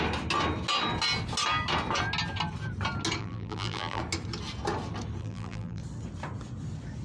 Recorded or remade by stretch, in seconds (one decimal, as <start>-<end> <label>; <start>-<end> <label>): 0.0-3.2 recorded; 3.2-4.0 remade; 4.0-5.2 recorded; 5.2-5.8 remade; 5.8-7.0 recorded